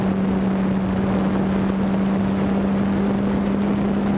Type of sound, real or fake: real